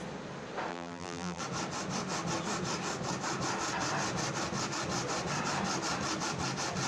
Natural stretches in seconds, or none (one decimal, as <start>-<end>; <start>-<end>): 0.0-0.7; 1.4-6.9